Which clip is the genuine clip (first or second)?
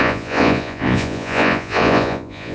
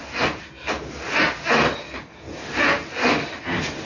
second